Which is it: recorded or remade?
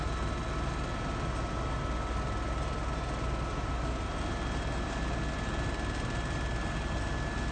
recorded